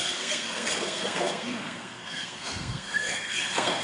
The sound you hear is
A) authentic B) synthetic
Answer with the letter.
B